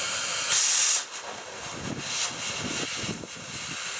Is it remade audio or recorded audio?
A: recorded